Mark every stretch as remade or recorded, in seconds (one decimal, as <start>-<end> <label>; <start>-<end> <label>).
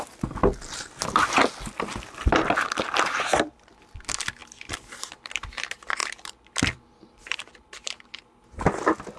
0.0-4.4 recorded; 4.4-5.3 remade; 5.3-6.0 recorded; 6.0-8.2 remade; 8.2-9.2 recorded